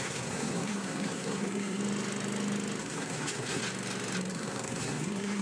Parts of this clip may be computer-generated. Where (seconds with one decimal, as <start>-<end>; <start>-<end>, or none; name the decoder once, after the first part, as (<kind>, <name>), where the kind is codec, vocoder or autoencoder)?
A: 0.0-1.8 (codec, SNAC); 2.8-3.6; 4.3-5.4